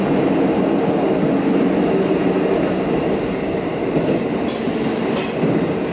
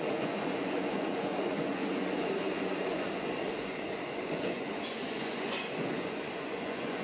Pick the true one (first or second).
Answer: first